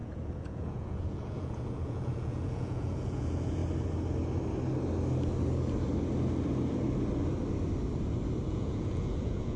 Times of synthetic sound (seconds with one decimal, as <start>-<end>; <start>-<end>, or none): 0.0-3.6; 8.5-9.6

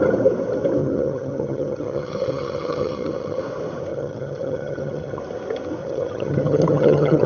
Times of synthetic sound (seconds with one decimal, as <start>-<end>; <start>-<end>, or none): 0.8-3.4; 3.9-5.2; 5.8-7.3